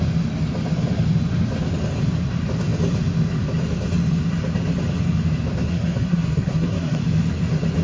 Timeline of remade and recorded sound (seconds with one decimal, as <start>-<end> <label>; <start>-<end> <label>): 0.0-5.7 recorded; 5.7-7.0 remade; 7.0-7.8 recorded